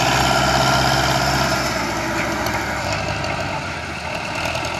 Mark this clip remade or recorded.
recorded